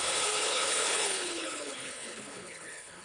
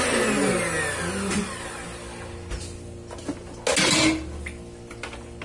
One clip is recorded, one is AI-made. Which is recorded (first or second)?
second